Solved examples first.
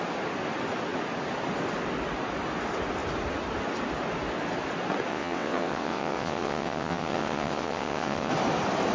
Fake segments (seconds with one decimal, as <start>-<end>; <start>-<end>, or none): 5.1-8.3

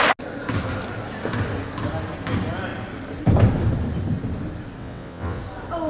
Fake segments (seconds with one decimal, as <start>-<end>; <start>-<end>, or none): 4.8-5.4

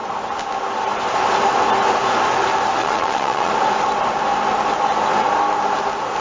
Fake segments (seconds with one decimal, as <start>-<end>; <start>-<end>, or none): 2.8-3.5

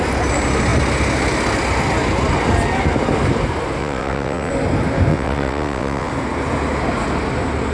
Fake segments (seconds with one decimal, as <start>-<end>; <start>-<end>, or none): 3.8-4.5; 5.1-6.1

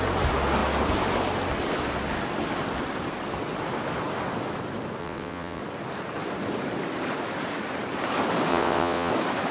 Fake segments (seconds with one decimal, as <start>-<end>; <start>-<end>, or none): 5.0-5.6; 8.5-9.1

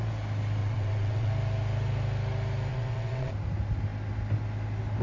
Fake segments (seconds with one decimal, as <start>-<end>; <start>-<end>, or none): 0.6-1.3; 2.7-3.3

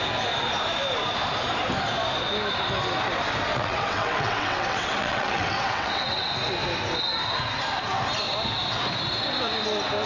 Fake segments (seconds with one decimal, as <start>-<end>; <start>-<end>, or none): 3.5-6.3